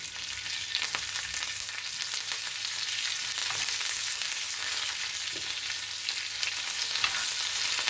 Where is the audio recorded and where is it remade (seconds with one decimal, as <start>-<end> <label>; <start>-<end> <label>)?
0.0-7.9 recorded